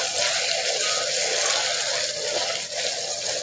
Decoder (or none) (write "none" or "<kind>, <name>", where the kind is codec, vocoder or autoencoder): none